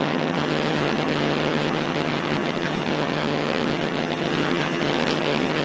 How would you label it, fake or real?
fake